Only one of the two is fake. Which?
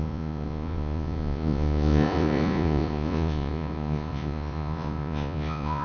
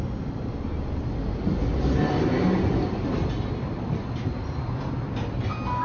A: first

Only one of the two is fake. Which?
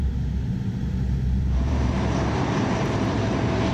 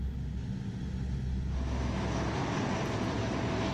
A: first